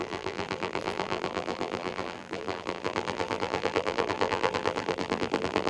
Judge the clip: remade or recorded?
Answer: remade